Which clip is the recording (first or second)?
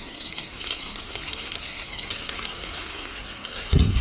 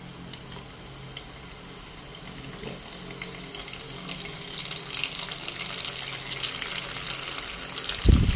second